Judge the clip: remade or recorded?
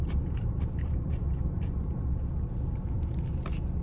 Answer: remade